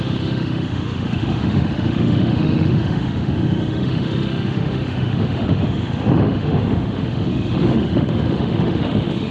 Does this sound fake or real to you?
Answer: fake